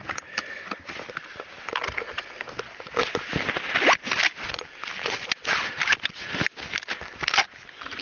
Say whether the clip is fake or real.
real